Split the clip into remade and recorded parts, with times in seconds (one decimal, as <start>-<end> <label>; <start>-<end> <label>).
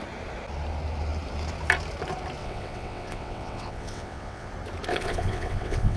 0.0-2.4 recorded; 2.4-4.5 remade; 4.5-4.9 recorded; 4.9-6.0 remade